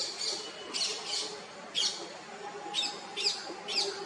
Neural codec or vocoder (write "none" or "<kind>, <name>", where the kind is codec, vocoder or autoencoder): none